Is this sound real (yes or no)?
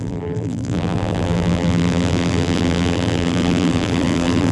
no